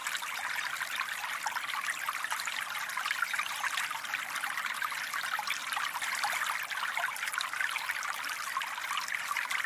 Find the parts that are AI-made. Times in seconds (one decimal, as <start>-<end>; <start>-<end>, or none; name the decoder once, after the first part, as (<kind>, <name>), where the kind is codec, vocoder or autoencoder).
4.2-5.6 (vocoder, BigVGAN v2); 9.2-9.7